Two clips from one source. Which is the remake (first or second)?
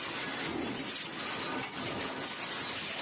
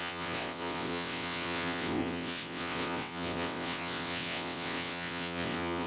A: second